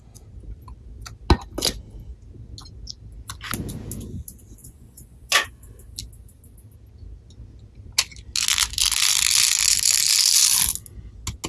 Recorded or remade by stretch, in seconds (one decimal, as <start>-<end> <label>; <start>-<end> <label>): 0.0-4.6 recorded; 4.6-5.7 remade; 5.7-11.5 recorded